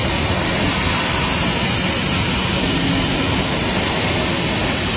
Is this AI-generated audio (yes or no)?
no